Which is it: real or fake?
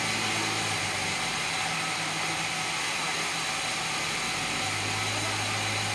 real